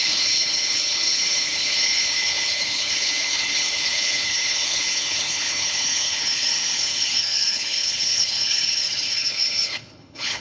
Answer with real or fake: fake